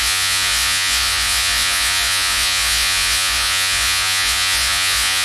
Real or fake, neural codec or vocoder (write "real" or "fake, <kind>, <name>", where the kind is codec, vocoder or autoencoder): fake, vocoder, Vocos